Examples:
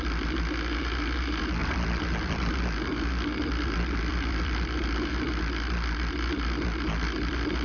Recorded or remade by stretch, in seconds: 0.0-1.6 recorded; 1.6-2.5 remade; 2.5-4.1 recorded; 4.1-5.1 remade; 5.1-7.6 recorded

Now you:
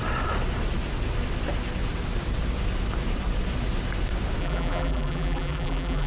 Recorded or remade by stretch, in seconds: 0.0-4.4 recorded; 4.4-6.1 remade

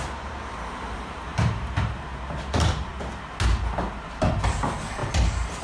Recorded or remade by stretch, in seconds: 0.0-2.9 remade; 2.9-4.2 recorded; 4.2-5.0 remade; 5.0-5.6 recorded